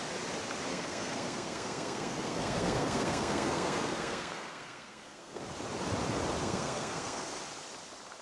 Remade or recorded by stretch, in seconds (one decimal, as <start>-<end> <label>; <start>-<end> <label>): 0.0-0.7 recorded; 0.7-5.4 remade; 5.4-6.4 recorded; 6.4-7.4 remade; 7.4-8.2 recorded